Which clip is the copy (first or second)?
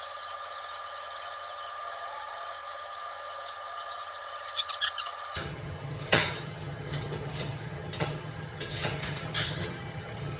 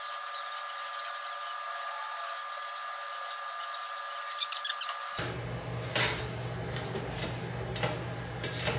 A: first